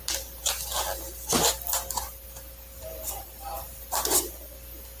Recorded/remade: recorded